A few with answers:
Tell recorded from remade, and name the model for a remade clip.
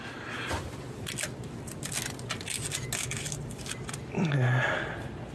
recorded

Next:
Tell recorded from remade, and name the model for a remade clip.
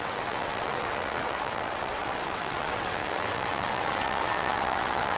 remade, vocoder, WaveNeXt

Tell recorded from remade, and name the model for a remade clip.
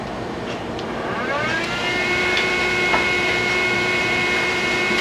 remade, vocoder, BigVGAN v2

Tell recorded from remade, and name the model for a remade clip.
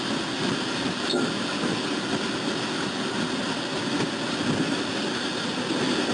recorded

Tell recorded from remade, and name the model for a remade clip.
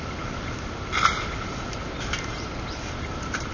recorded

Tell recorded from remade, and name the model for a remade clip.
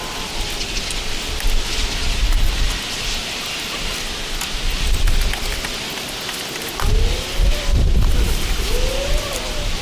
recorded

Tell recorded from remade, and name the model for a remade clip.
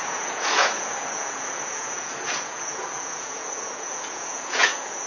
remade, vocoder, Vocos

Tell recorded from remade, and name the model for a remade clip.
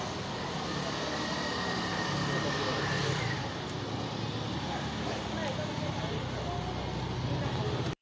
recorded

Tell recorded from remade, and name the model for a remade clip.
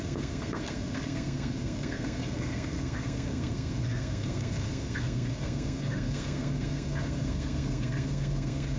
remade, codec, SNAC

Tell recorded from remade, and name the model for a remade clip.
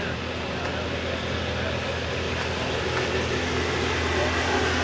recorded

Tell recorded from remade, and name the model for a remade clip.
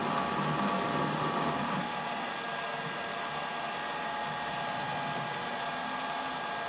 recorded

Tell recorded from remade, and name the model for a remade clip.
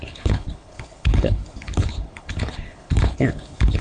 remade, codec, HILCodec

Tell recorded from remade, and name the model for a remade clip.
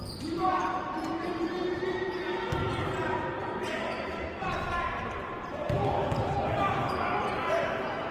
recorded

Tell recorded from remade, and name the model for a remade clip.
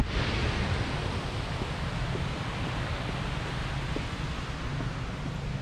recorded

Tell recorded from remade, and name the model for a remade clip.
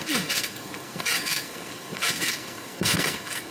remade, codec, SNAC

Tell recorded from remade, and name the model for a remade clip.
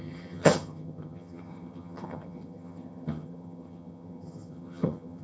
remade, vocoder, HiFi-GAN